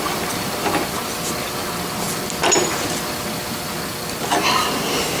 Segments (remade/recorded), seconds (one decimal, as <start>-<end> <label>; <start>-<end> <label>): 0.0-5.2 recorded